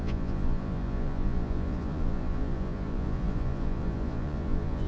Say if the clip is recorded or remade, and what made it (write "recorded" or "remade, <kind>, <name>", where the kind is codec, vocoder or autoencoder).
remade, vocoder, Vocos